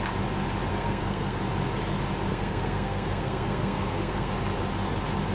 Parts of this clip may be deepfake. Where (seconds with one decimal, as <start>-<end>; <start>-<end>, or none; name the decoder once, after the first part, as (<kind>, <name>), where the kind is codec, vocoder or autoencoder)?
0.7-1.4 (codec, SNAC); 2.3-4.3